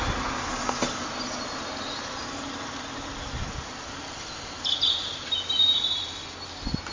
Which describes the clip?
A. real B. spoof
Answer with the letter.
A